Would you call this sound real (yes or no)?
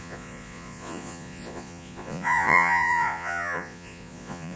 no